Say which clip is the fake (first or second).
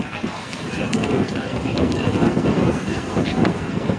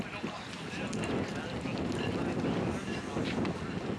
first